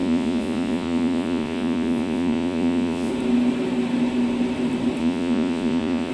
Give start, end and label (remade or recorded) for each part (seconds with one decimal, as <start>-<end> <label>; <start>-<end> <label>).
0.0-3.1 remade; 3.1-5.0 recorded; 5.0-6.1 remade